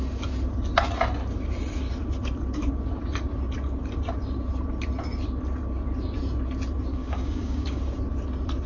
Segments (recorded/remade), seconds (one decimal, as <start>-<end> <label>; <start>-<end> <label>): 0.0-6.9 recorded; 6.9-7.8 remade; 7.8-8.7 recorded